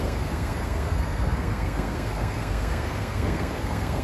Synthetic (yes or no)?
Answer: yes